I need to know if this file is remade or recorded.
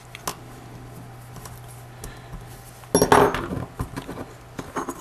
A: recorded